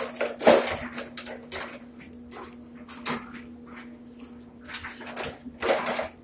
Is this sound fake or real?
real